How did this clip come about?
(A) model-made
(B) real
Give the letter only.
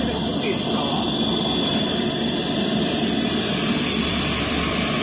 A